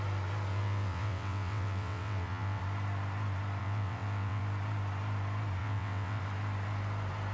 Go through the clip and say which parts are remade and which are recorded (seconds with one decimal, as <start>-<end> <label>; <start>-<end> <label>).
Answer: 0.0-0.5 recorded; 0.5-2.6 remade; 2.6-3.6 recorded; 3.6-4.4 remade; 4.4-5.6 recorded; 5.6-6.2 remade; 6.2-7.3 recorded